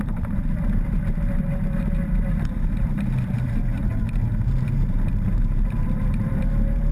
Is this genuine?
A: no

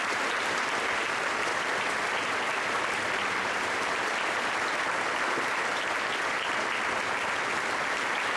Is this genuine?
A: no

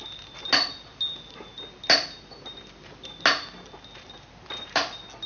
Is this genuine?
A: yes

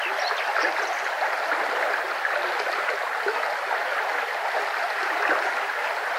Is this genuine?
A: yes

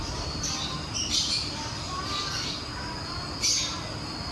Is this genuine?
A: no